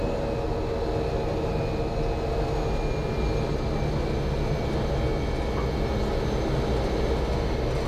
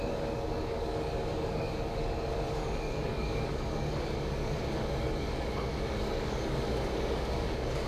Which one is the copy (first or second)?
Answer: second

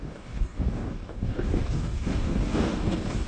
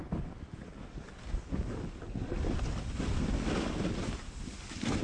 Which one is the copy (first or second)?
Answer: first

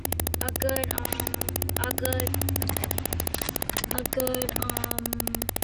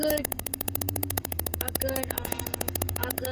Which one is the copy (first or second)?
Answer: second